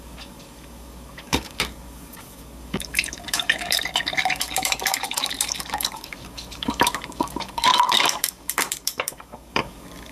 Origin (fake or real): fake